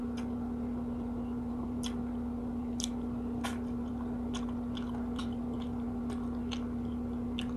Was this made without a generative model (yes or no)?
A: yes